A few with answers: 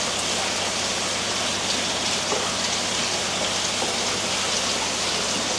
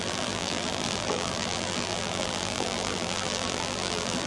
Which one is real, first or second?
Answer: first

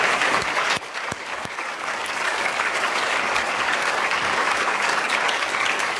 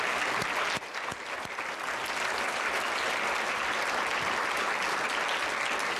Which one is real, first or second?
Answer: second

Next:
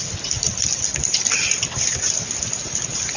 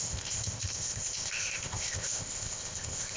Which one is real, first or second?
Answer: first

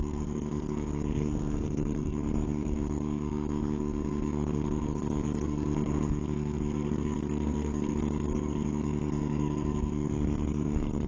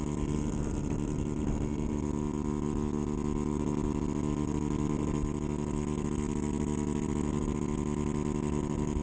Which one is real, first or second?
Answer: second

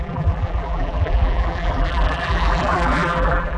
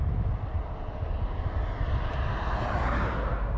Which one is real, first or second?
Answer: second